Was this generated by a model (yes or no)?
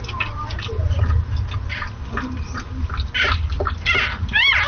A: no